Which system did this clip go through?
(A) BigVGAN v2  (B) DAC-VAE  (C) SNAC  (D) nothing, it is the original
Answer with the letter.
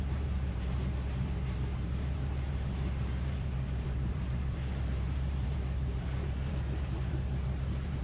A